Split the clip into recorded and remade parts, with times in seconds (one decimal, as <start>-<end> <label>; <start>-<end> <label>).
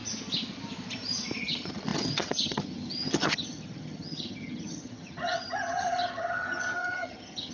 0.0-1.4 recorded; 1.4-7.5 remade